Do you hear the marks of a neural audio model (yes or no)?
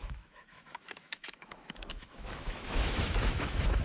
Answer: yes